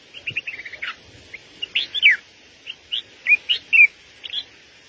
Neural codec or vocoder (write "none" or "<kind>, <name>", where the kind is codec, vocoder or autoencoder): none